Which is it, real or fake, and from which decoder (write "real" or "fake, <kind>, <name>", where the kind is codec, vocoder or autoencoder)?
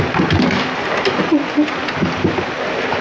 real